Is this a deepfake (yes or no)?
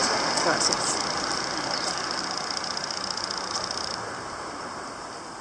no